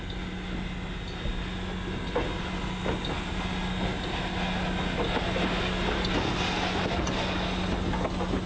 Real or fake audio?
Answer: real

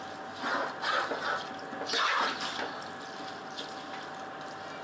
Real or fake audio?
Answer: real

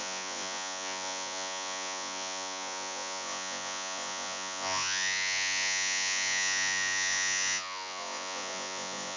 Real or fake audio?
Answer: fake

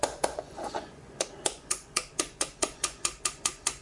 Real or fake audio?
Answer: fake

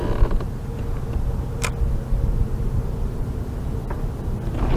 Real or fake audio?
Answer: real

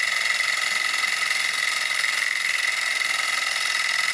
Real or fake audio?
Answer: real